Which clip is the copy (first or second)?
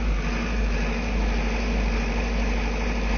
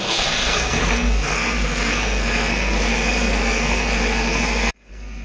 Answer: second